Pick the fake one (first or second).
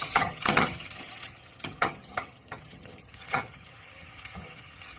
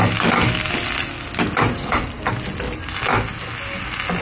first